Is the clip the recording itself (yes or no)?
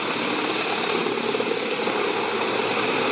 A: yes